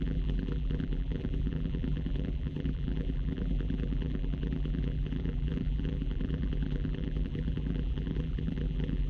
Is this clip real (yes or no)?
no